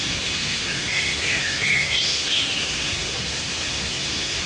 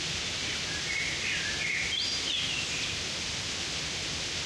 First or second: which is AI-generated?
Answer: first